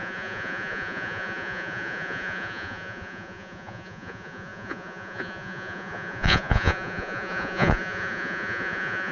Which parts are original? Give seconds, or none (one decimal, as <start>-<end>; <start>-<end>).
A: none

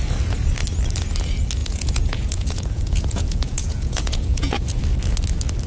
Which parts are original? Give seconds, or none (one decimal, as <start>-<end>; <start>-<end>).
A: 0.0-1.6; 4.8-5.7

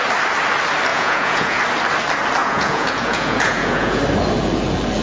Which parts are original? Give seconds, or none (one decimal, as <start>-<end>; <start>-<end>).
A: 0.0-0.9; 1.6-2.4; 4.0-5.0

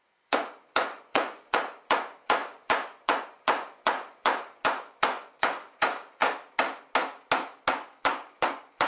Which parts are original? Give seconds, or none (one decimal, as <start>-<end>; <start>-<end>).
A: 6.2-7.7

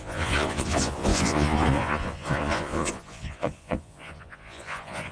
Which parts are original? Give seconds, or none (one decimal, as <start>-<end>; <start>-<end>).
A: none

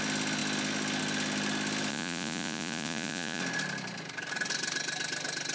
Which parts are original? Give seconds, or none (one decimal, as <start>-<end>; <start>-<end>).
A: 0.0-1.9; 3.4-5.5

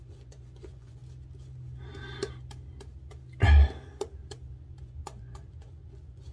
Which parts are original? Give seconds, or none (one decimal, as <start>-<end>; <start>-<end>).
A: 1.0-4.8

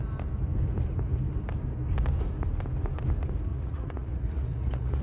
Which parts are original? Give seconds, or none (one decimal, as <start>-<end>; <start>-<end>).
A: 0.0-3.5